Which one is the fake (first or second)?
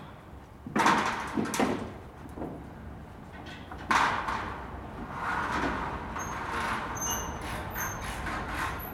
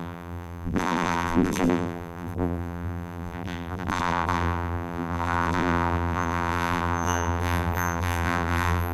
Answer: second